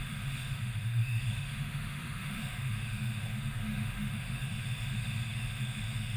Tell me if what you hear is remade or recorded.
remade